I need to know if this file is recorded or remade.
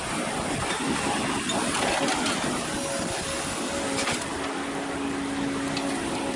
recorded